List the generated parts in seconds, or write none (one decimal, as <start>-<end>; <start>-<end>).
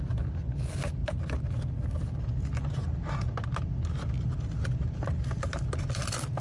none